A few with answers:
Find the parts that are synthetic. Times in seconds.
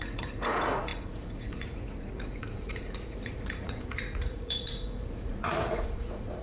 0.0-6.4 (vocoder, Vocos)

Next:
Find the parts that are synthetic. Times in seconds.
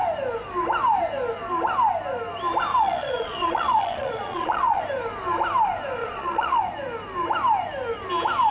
2.7-4.8 (vocoder, Vocos); 6.0-6.6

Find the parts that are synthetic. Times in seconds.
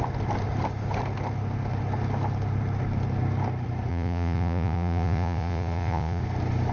3.9-6.2 (vocoder, Vocos)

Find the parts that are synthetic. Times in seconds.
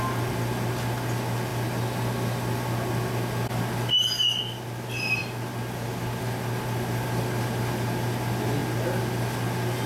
none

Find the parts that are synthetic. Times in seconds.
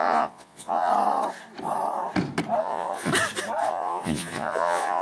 0.0-0.9 (vocoder, Vocos); 2.6-3.1; 3.7-5.0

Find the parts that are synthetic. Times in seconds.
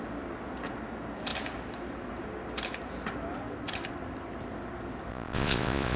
5.1-6.0 (vocoder, Vocos)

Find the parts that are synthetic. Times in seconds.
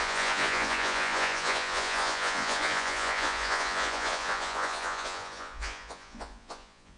0.0-7.0 (vocoder, Vocos)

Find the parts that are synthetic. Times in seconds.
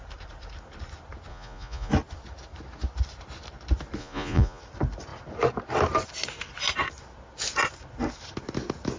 1.3-1.9 (vocoder, Vocos); 4.0-4.6